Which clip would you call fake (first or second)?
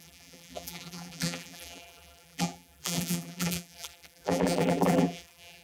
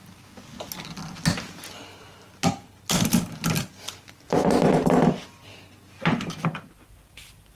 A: first